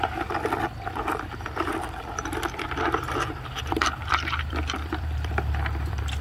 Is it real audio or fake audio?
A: fake